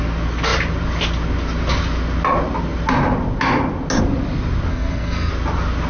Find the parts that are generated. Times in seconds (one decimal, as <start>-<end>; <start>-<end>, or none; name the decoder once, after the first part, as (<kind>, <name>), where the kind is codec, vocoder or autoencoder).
4.7-5.3 (codec, SNAC)